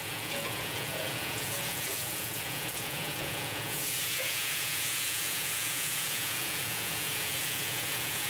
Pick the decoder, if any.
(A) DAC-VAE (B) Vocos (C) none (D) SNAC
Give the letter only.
B